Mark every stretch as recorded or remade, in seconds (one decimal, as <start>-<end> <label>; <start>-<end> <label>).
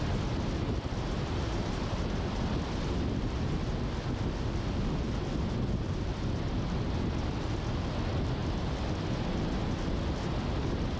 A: 0.0-11.0 recorded